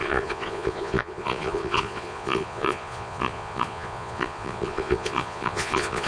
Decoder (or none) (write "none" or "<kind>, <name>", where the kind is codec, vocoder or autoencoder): vocoder, Vocos